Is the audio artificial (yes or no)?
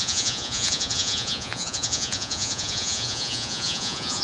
yes